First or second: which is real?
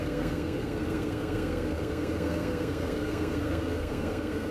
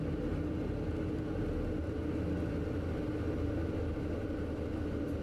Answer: second